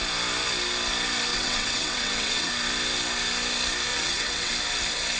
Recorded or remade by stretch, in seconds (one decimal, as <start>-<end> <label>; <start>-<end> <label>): 0.0-1.3 recorded; 1.3-2.5 remade; 2.5-3.9 recorded; 3.9-4.5 remade; 4.5-5.2 recorded